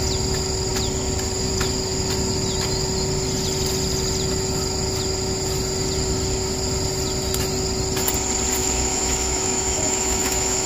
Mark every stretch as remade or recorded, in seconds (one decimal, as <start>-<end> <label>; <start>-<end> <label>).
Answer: 0.0-8.6 recorded; 8.6-10.7 remade